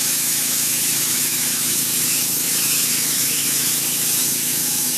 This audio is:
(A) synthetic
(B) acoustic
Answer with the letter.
A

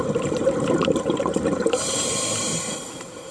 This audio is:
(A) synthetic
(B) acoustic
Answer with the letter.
A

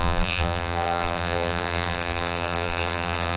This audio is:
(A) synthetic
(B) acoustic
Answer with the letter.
A